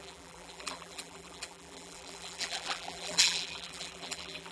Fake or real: fake